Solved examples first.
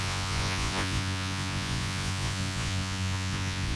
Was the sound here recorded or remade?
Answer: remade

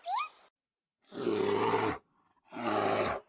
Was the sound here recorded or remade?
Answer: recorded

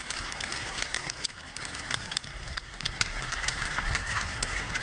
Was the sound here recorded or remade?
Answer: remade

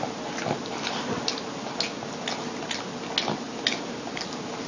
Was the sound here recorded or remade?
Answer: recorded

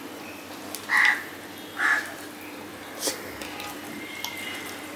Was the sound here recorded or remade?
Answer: recorded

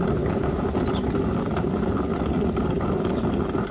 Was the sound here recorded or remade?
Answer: recorded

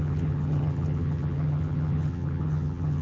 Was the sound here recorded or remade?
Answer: remade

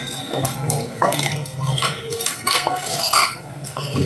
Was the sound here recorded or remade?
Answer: remade